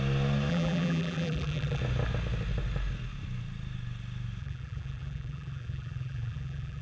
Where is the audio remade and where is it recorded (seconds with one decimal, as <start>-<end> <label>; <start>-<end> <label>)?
0.0-0.5 recorded; 0.5-1.8 remade; 1.8-4.4 recorded; 4.4-6.8 remade

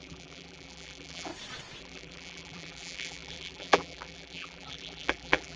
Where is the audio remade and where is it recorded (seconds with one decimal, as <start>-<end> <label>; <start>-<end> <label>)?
0.0-1.3 remade; 1.3-1.8 recorded; 1.8-5.6 remade